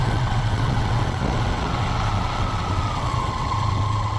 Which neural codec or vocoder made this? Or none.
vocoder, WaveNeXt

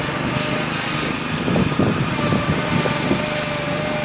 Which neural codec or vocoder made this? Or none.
none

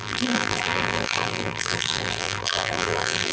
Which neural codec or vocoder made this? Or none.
vocoder, BigVGAN v2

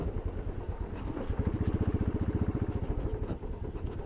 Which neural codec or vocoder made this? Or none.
vocoder, BigVGAN v2